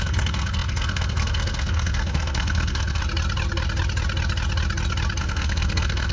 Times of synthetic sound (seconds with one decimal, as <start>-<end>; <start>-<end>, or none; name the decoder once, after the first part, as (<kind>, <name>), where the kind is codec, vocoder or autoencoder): 0.0-3.0 (codec, SNAC); 5.2-6.1